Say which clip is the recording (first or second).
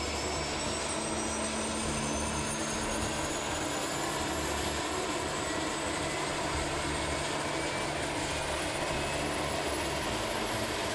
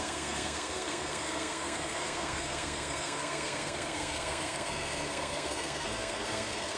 first